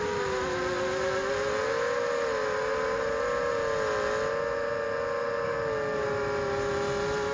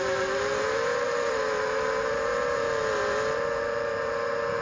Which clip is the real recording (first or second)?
first